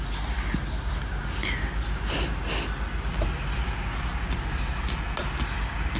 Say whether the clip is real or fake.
real